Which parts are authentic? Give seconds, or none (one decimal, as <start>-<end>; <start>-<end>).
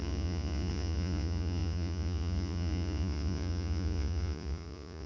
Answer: none